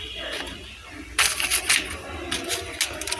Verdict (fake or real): real